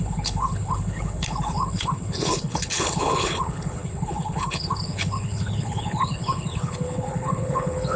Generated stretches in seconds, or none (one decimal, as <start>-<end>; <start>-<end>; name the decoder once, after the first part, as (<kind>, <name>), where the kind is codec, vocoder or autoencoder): 0.0-8.0 (codec, HILCodec)